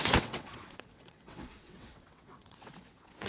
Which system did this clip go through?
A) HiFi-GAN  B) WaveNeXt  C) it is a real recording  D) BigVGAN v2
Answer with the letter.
B